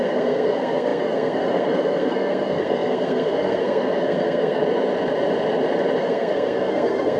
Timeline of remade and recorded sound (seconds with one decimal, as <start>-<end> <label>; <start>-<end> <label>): 0.0-4.6 remade; 4.6-6.0 recorded; 6.0-7.2 remade